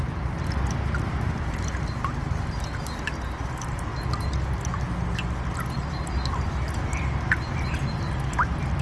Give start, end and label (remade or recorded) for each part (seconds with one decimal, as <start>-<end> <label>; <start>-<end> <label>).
0.0-8.8 recorded